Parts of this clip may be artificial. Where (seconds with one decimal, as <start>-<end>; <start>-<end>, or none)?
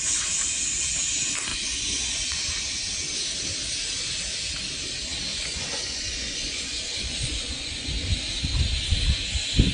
1.5-2.4; 5.3-7.9